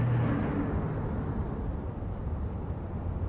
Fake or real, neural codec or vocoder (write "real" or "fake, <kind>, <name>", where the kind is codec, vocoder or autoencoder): real